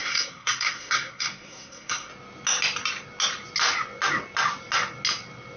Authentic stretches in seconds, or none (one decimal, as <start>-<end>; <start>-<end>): 2.1-5.6